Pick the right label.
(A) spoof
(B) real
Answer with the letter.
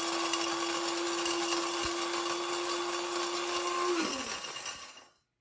B